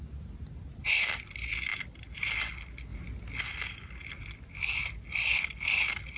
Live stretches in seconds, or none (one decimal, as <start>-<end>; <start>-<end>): 0.0-6.2